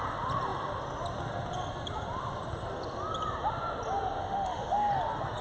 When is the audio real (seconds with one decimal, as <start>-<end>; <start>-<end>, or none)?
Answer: 0.0-4.2; 4.9-5.4